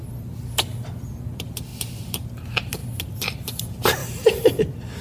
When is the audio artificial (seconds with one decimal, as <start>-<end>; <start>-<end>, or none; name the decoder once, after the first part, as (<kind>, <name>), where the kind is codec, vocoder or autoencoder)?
none